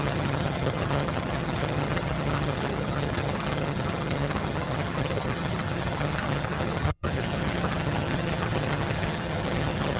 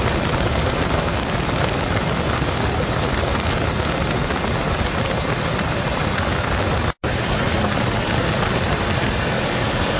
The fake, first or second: first